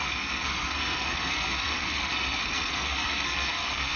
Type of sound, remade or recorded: remade